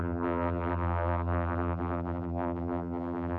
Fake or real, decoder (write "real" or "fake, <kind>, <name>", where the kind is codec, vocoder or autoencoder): fake, vocoder, BigVGAN v2